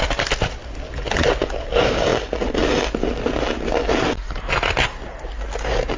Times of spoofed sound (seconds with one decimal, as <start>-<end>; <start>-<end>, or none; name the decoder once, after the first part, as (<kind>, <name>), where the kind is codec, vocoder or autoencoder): none